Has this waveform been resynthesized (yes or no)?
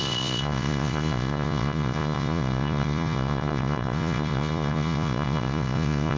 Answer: yes